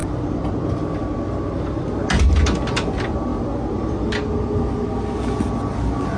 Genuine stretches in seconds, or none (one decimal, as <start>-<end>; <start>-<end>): 0.0-6.2